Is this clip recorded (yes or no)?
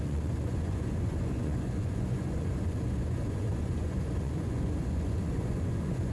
no